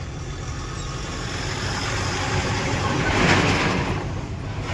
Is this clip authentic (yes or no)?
yes